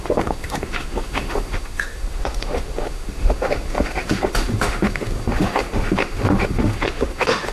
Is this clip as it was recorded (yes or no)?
no